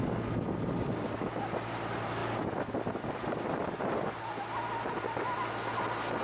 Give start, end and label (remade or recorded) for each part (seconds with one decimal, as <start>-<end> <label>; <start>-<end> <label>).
0.0-6.2 recorded